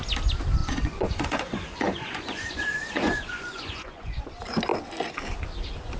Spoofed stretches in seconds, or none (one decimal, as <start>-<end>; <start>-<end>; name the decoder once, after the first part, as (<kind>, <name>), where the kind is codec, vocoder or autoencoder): 0.6-4.2 (vocoder, Vocos)